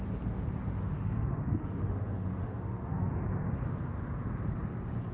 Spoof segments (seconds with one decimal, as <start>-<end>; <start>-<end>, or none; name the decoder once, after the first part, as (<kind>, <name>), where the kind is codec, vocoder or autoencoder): 0.7-3.1 (autoencoder, DAC-VAE)